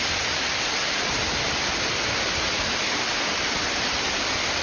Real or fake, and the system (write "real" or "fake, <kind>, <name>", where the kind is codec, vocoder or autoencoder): real